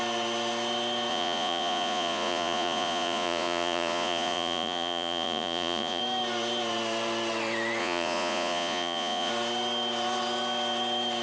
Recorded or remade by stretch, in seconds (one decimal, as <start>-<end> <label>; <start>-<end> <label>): 0.0-1.1 recorded; 1.1-6.0 remade; 6.0-7.8 recorded; 7.8-9.3 remade; 9.3-11.2 recorded